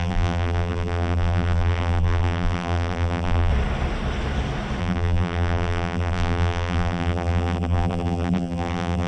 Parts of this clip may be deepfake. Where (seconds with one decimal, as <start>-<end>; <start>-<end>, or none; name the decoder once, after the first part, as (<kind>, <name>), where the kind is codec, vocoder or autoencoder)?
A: 0.0-3.5 (vocoder, BigVGAN v2); 4.8-9.1